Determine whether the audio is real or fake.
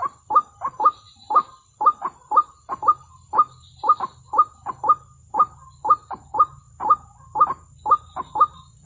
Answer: real